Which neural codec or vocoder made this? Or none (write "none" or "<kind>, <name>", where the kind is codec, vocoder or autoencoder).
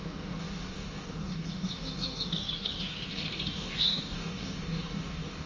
codec, DAC